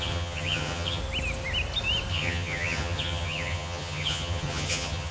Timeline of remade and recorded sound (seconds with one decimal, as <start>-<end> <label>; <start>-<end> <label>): 0.0-1.0 remade; 1.0-2.1 recorded; 2.1-5.1 remade